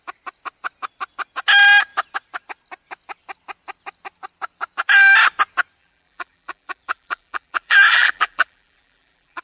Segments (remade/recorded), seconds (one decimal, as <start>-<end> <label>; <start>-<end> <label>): 0.0-5.8 recorded; 5.8-9.4 remade